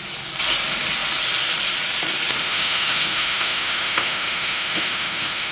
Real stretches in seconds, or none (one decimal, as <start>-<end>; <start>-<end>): 0.0-2.4